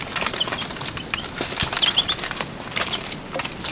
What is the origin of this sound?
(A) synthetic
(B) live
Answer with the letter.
B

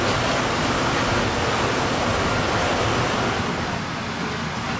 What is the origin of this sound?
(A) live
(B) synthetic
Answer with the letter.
A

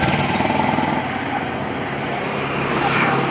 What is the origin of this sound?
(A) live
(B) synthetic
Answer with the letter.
A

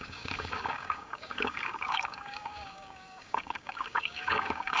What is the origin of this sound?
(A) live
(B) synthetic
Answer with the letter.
B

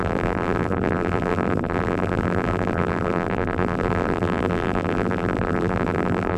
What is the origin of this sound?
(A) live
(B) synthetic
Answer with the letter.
B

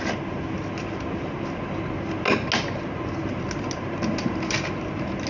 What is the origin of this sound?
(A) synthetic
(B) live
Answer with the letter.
B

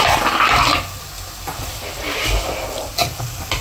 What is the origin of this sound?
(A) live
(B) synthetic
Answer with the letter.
A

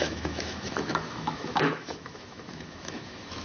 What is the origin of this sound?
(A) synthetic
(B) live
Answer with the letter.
A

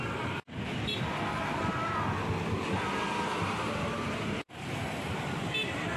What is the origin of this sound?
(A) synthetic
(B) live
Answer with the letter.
B